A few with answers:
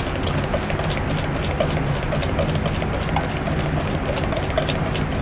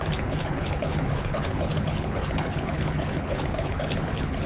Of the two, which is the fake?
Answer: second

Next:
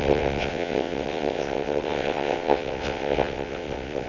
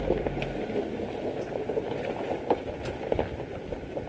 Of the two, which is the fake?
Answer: first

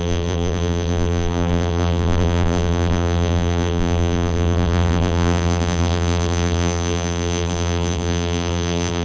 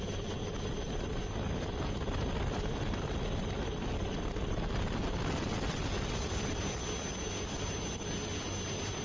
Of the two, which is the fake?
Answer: first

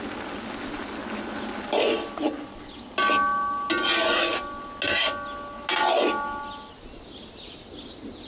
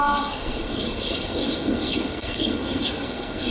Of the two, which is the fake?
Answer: second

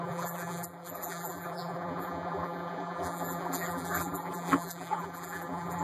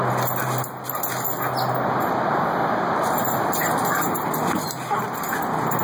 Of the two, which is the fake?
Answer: first